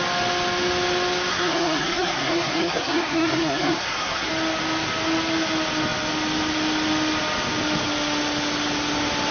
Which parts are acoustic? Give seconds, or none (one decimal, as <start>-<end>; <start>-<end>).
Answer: 0.0-1.3; 4.3-9.3